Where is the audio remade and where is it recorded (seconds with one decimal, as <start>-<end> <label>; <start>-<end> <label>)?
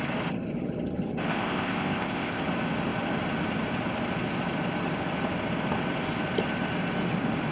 0.0-1.3 recorded; 1.3-2.4 remade; 2.4-7.5 recorded